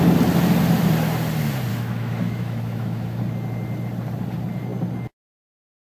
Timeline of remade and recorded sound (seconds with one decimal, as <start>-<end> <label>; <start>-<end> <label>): 0.0-1.7 recorded; 1.7-3.2 remade; 3.2-5.8 recorded

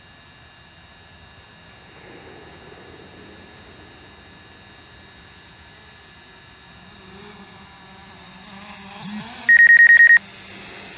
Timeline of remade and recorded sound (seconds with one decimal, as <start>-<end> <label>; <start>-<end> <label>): 0.0-11.0 recorded

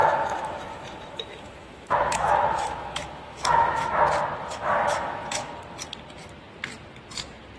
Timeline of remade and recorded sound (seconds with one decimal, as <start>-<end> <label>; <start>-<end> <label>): 0.0-4.0 remade; 4.0-4.4 recorded; 4.4-5.5 remade; 5.5-7.6 recorded

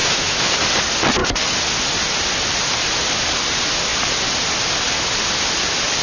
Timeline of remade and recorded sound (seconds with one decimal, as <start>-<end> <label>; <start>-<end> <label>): 0.0-0.5 remade; 0.5-6.0 recorded

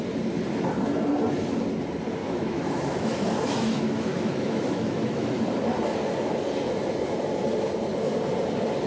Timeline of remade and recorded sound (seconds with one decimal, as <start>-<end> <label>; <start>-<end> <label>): 0.0-2.2 recorded; 2.2-5.4 remade; 5.4-8.9 recorded